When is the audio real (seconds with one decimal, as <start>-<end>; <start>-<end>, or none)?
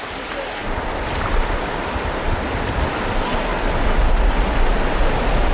0.0-5.5